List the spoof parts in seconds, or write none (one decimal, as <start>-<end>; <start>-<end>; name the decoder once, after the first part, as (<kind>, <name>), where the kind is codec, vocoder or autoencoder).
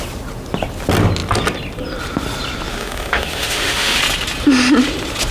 2.7-4.0 (autoencoder, DAC-VAE)